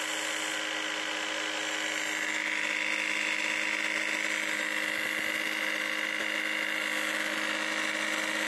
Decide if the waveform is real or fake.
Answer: real